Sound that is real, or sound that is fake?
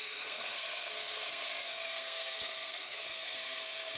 fake